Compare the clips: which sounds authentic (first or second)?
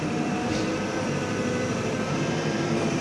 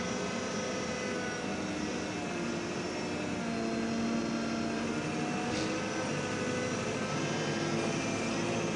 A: second